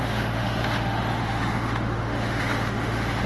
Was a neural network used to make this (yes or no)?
yes